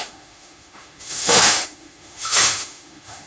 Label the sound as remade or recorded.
remade